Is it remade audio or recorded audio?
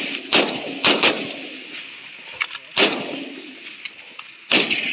recorded